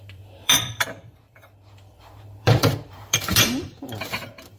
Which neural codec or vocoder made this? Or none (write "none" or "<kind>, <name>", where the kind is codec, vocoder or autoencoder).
vocoder, BigVGAN v2